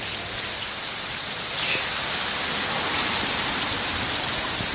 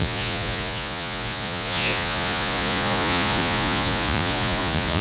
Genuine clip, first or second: first